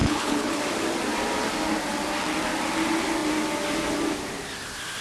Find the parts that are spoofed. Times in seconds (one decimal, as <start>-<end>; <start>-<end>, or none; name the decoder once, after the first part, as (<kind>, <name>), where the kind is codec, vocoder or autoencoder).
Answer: 0.0-0.6 (codec, HILCodec)